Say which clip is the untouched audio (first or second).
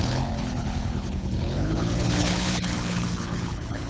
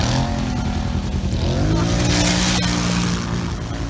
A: second